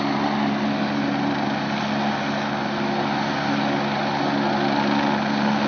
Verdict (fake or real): real